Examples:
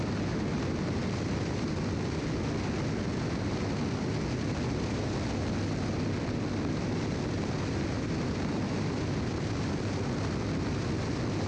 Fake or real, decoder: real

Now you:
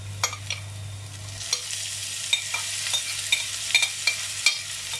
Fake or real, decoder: real